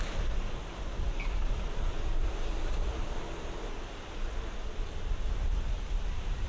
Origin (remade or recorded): recorded